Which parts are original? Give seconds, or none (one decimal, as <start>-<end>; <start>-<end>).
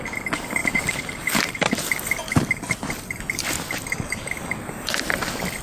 0.0-0.6; 1.7-5.6